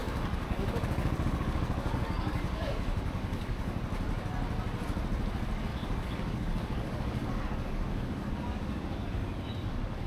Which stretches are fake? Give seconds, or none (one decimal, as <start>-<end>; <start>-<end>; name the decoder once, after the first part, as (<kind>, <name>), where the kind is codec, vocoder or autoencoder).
0.0-3.8 (codec, DAC); 5.7-10.1